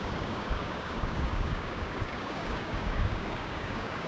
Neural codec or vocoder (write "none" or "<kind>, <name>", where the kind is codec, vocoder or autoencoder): codec, DAC